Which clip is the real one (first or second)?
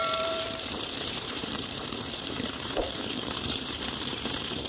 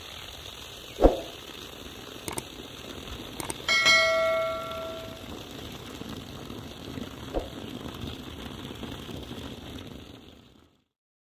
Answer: second